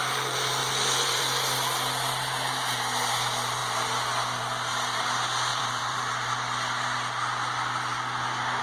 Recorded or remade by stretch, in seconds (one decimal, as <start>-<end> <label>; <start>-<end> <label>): 0.0-0.6 recorded; 0.6-1.2 remade; 1.2-5.5 recorded; 5.5-8.6 remade